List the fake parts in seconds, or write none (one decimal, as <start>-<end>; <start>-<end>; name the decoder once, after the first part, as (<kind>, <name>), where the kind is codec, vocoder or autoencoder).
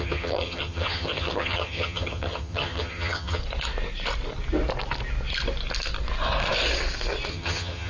0.0-3.4 (vocoder, HiFi-GAN); 7.3-7.9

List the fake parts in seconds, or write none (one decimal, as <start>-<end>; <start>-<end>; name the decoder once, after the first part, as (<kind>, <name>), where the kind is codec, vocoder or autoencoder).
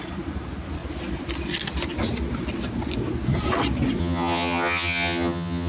4.0-5.7 (vocoder, HiFi-GAN)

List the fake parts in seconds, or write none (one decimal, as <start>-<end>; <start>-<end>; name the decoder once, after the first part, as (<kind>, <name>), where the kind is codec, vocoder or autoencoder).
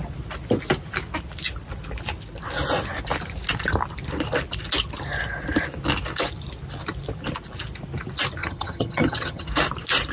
8.4-9.5 (vocoder, HiFi-GAN)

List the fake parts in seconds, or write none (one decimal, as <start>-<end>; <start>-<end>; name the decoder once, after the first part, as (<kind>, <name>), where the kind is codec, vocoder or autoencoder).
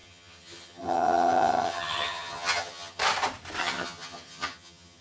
0.0-3.0 (vocoder, HiFi-GAN); 3.6-5.0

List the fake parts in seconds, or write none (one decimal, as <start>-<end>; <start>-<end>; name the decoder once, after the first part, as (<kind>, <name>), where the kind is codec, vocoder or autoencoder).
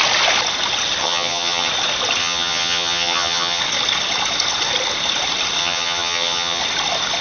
1.0-1.7 (vocoder, HiFi-GAN); 2.2-3.6; 5.6-6.6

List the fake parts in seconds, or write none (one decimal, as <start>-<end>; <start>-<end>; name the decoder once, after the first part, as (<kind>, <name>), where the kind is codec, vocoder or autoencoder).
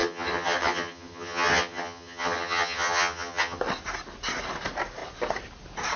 0.0-3.6 (vocoder, HiFi-GAN)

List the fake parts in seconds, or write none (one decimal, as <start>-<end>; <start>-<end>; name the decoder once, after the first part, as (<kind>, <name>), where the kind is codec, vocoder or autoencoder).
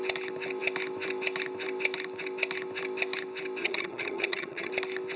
3.6-4.7 (vocoder, HiFi-GAN)